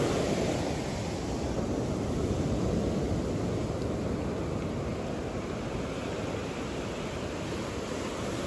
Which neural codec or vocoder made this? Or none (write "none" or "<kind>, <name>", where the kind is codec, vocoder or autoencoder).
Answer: none